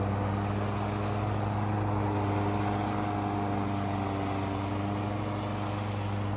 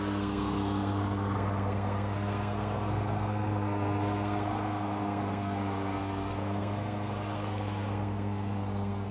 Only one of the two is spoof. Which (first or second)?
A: second